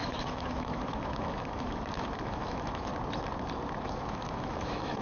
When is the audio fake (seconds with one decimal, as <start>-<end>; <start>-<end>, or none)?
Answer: 0.0-2.9; 3.8-5.0